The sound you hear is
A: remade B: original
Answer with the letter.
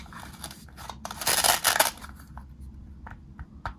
B